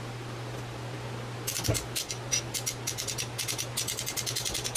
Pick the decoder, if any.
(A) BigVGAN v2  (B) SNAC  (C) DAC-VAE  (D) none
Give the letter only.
D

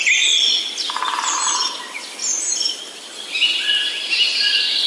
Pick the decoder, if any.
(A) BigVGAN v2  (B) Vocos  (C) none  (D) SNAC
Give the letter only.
A